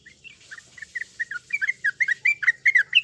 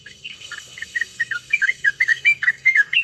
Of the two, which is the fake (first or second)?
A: second